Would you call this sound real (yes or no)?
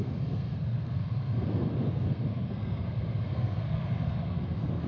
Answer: no